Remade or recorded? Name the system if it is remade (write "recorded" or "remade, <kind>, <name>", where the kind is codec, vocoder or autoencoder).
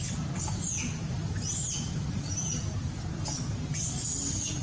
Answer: recorded